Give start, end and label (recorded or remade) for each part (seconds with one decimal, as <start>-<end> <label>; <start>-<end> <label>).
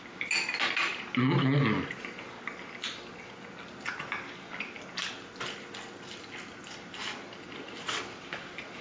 0.0-8.8 recorded